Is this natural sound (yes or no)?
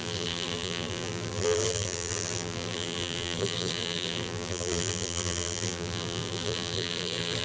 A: no